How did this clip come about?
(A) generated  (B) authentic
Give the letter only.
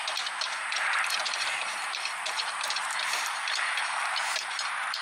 A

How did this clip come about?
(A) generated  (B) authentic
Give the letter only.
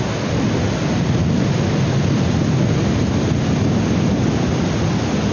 B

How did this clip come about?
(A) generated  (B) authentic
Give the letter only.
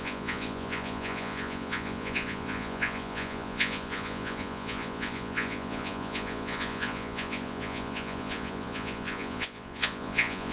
A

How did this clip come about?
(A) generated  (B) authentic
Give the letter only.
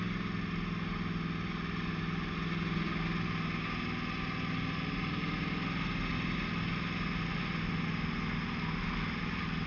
B